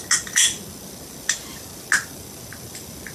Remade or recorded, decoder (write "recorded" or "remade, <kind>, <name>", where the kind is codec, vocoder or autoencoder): recorded